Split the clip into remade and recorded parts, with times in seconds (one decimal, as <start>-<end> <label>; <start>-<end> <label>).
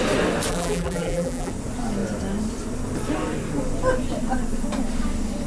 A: 0.0-0.5 recorded; 0.5-1.5 remade; 1.5-5.5 recorded